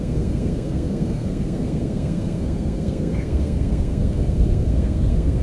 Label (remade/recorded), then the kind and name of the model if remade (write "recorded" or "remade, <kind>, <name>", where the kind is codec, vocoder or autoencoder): remade, codec, SNAC